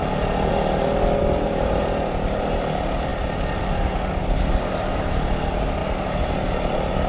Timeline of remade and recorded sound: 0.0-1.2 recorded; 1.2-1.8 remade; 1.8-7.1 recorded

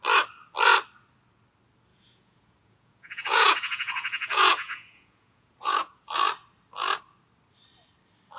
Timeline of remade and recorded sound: 0.0-1.9 recorded; 1.9-6.0 remade; 6.0-8.4 recorded

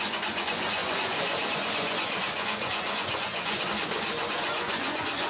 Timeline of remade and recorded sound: 0.0-5.3 remade

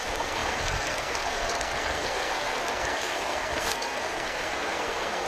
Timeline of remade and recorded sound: 0.0-5.3 remade

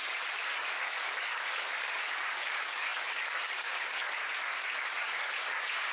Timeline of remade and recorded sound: 0.0-4.2 remade; 4.2-5.0 recorded; 5.0-5.9 remade

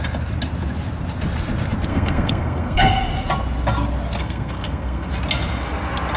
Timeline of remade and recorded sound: 0.0-1.9 recorded; 1.9-2.8 remade; 2.8-4.2 recorded; 4.2-5.1 remade; 5.1-6.2 recorded